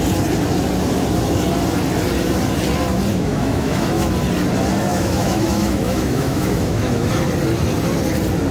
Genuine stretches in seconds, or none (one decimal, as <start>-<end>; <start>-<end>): 0.0-3.1; 4.1-4.9; 7.1-8.5